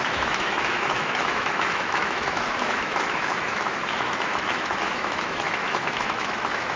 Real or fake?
fake